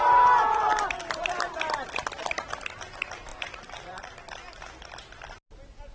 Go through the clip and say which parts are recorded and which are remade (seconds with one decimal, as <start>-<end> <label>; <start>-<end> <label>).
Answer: 0.0-3.3 recorded; 3.3-4.2 remade; 4.2-5.9 recorded